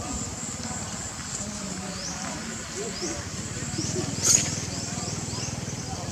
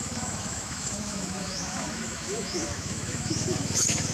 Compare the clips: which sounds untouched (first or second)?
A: first